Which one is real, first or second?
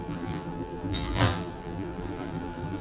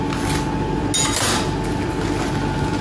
second